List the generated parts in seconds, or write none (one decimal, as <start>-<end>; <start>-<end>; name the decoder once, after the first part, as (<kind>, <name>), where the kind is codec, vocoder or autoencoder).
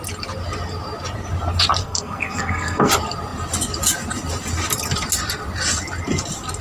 1.8-2.9 (codec, SNAC)